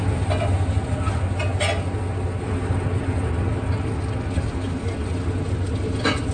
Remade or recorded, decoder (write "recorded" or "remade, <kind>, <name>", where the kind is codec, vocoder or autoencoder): recorded